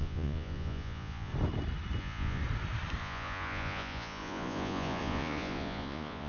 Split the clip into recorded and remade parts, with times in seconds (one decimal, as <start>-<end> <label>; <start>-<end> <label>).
0.0-1.3 remade; 1.3-2.0 recorded; 2.0-2.4 remade; 2.4-3.0 recorded; 3.0-6.3 remade